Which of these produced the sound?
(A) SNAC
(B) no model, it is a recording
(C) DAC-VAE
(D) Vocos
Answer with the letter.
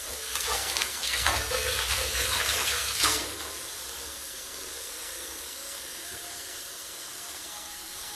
A